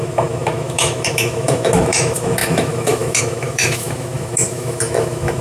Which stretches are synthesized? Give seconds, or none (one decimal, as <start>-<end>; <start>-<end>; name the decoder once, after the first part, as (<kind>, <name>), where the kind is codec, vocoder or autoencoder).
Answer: 0.0-5.4 (autoencoder, DAC-VAE)